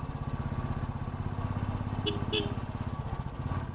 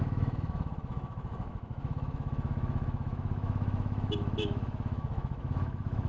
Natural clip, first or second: first